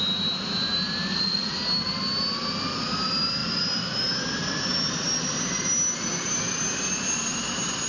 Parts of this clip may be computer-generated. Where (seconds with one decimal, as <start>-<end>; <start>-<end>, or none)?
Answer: 1.1-1.6